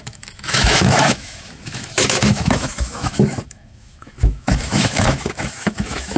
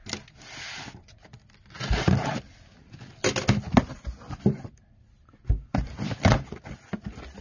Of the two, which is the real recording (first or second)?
second